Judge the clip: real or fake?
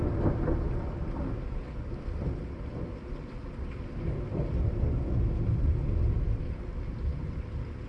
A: real